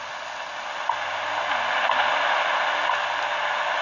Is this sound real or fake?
real